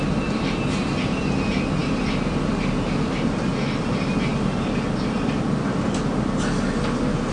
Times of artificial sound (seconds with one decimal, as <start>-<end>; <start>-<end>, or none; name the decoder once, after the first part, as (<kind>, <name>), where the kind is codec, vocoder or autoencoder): none